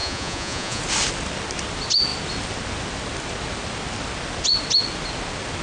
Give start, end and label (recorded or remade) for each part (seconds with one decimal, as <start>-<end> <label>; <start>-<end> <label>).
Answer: 0.0-0.8 remade; 0.8-5.6 recorded